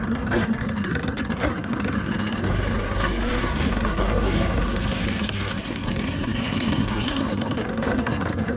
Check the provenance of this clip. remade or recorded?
remade